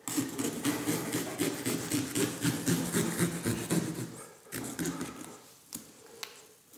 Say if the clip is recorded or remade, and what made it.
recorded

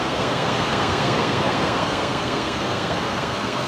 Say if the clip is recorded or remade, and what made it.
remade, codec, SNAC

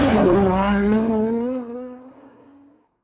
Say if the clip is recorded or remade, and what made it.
remade, codec, SNAC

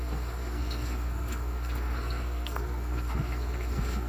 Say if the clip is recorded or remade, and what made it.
remade, codec, SNAC